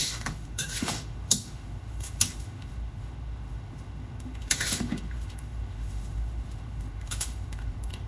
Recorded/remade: remade